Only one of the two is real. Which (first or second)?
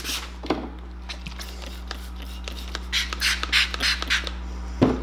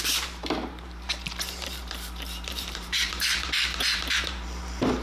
first